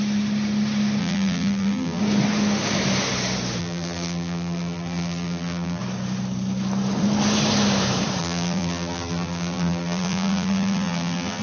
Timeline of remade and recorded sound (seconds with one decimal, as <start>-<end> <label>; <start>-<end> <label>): 0.0-1.0 recorded; 1.0-2.0 remade; 2.0-3.6 recorded; 3.6-5.8 remade; 5.8-8.2 recorded; 8.2-11.4 remade